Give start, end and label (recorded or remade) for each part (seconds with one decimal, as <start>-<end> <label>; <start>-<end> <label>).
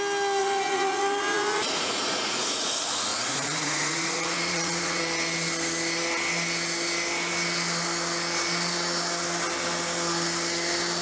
0.0-0.4 recorded; 0.4-2.7 remade; 2.7-3.1 recorded; 3.1-5.0 remade; 5.0-11.0 recorded